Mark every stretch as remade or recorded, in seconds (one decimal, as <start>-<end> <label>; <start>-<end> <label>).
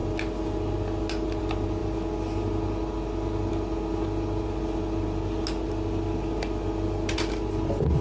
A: 0.0-8.0 recorded